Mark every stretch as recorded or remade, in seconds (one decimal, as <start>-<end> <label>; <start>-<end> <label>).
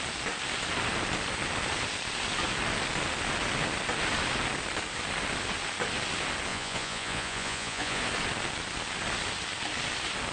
0.0-6.5 recorded; 6.5-8.0 remade; 8.0-10.3 recorded